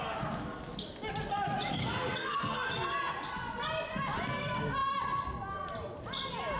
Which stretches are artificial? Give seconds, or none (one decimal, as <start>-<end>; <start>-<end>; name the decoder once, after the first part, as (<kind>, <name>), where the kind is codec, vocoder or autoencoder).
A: 1.8-2.7 (codec, SNAC)